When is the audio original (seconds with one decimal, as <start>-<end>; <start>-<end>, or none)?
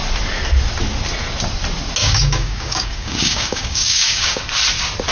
0.0-2.0; 4.4-5.1